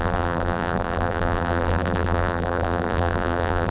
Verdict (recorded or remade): remade